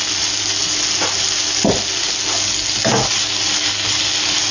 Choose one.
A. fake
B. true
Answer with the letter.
B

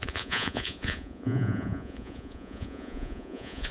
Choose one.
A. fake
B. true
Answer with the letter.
A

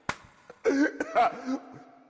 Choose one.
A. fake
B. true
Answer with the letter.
B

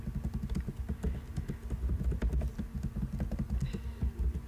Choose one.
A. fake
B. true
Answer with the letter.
B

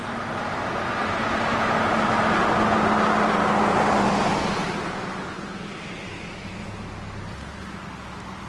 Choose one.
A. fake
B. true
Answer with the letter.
B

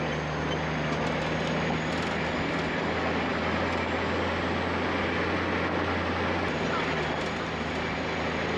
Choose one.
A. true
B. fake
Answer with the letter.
A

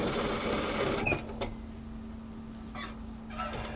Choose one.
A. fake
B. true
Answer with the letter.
B